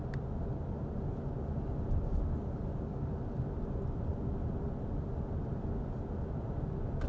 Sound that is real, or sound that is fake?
real